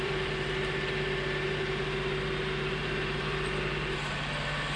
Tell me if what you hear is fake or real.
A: real